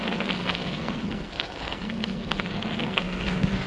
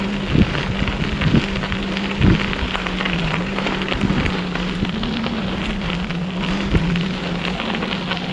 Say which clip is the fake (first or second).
first